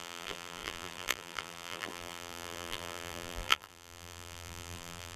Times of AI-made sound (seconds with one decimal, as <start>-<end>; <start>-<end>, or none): 0.0-5.2